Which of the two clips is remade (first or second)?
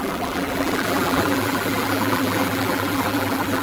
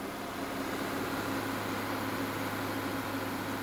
first